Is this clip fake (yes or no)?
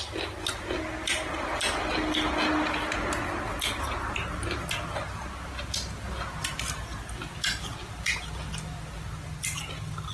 no